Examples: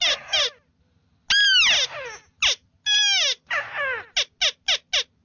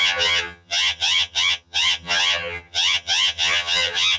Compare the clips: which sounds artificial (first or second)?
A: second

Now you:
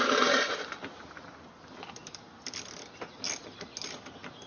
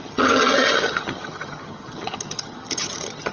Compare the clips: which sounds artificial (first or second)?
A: second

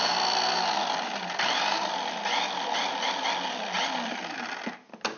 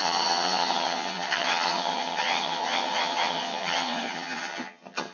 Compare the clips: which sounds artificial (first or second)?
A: second